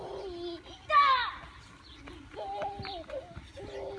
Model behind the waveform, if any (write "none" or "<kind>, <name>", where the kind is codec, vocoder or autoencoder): none